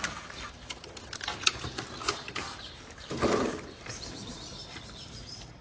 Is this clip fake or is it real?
fake